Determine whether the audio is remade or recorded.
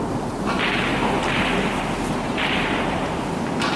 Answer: recorded